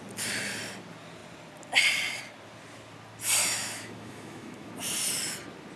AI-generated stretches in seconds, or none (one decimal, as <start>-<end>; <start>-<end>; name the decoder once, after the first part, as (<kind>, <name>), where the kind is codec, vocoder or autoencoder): 3.4-4.7 (autoencoder, DAC-VAE)